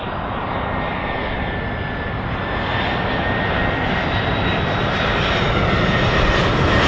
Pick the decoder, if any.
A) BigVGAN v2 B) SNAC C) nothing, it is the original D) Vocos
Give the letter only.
C